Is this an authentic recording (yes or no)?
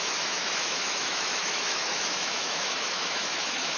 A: no